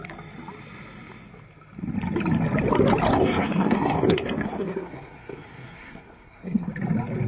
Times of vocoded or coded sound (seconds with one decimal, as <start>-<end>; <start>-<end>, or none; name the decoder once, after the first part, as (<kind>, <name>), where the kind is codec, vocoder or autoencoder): 3.1-6.7 (codec, SNAC)